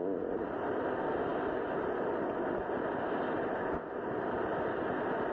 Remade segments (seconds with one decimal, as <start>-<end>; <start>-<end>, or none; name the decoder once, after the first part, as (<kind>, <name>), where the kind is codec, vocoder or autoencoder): none

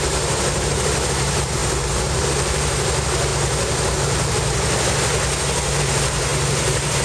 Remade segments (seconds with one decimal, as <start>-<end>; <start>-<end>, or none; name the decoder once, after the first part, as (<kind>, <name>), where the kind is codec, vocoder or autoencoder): 0.0-3.3 (vocoder, BigVGAN v2); 5.8-7.0

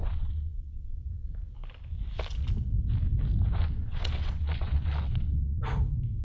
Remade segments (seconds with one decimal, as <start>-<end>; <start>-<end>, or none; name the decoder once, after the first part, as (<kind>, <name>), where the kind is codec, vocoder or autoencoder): 0.0-1.0 (vocoder, WaveNeXt); 3.8-5.6

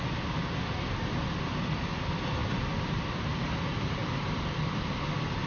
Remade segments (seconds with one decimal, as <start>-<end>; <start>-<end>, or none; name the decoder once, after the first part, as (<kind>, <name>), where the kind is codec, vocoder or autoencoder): 4.0-5.1 (vocoder, BigVGAN v2)